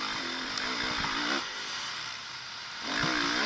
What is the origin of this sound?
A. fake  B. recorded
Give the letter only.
B